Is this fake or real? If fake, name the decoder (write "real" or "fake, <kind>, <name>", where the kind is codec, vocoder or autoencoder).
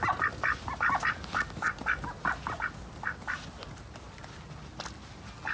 real